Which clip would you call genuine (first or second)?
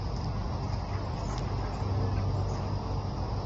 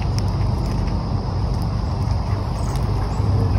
first